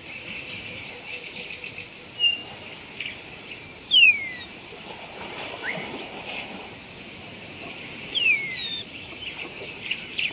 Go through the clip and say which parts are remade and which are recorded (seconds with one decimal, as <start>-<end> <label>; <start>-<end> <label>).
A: 0.0-2.4 remade; 2.4-3.3 recorded; 3.3-10.3 remade